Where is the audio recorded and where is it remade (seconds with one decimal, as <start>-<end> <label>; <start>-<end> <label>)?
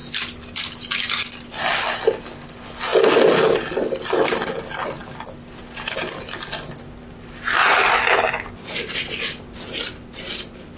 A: 0.0-10.8 recorded